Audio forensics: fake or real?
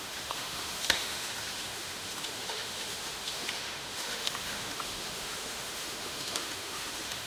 fake